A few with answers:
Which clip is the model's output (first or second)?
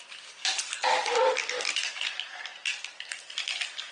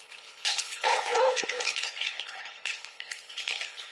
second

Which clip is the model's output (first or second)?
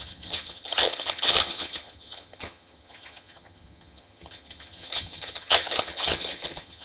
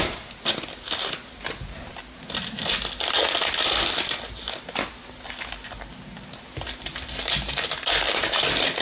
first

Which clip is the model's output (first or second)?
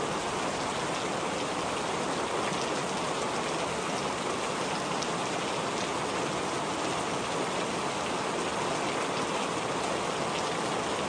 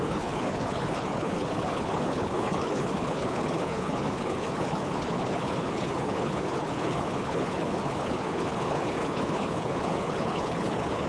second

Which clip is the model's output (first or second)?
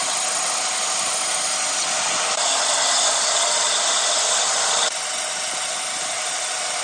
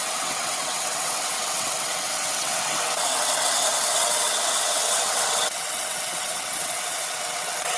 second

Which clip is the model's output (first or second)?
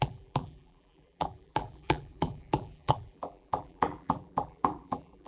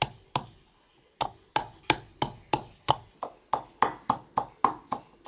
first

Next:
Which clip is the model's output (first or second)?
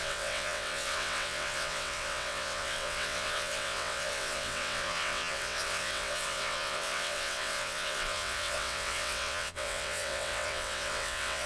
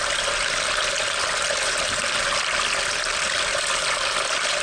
first